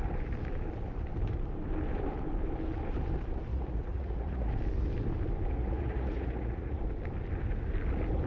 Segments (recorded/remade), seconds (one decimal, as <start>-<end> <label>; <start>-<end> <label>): 0.0-3.5 recorded; 3.5-4.5 remade; 4.5-5.5 recorded; 5.5-6.8 remade; 6.8-8.3 recorded